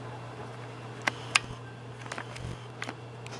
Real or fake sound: real